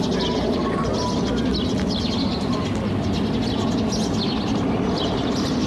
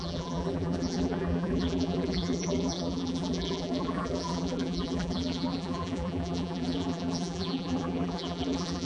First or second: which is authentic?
first